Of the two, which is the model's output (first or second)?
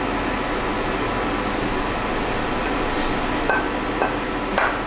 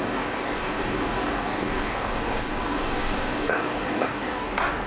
second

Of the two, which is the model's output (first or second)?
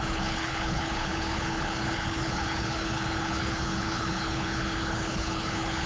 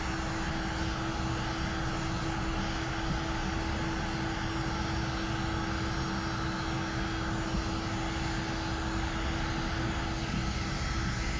first